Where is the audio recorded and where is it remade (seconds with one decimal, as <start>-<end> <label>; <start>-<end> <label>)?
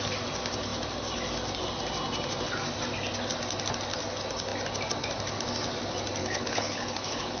0.0-6.2 recorded; 6.2-7.4 remade